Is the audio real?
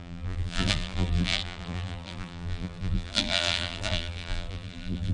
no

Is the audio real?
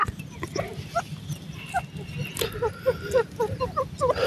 yes